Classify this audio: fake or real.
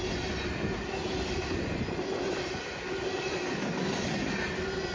real